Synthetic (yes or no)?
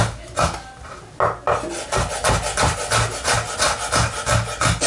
no